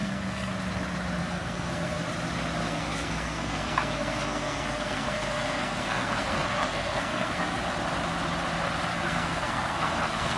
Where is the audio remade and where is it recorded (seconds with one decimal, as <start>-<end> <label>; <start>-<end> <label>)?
0.0-0.5 remade; 0.5-1.2 recorded; 1.2-2.0 remade; 2.0-2.6 recorded; 2.6-7.6 remade; 7.6-8.9 recorded; 8.9-10.4 remade